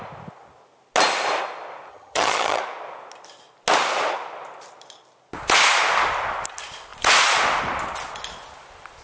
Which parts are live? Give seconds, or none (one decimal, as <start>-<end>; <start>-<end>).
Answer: 0.0-1.9; 2.6-9.0